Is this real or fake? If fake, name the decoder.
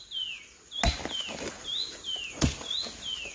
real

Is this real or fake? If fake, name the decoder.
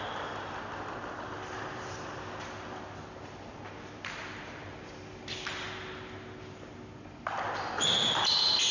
real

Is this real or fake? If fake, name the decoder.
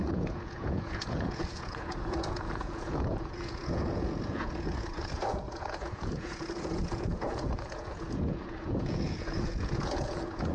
fake, vocoder, Vocos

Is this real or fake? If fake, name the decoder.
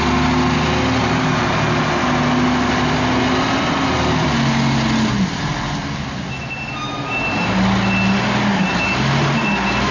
real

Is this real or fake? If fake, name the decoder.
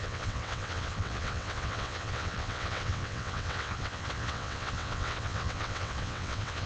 fake, vocoder, WaveNeXt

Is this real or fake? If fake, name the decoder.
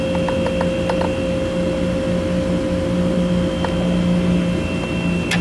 real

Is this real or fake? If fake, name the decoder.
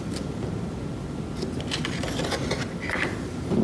real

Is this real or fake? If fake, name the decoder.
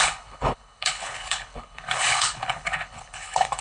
fake, codec, HILCodec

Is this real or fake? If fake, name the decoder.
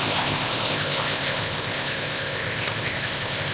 fake, codec, ZipCodec